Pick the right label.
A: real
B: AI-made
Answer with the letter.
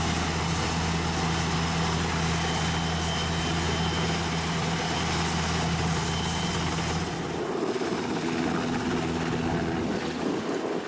A